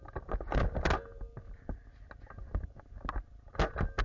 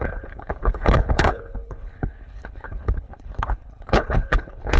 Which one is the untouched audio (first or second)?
first